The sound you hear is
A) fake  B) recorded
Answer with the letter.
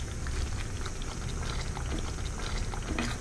B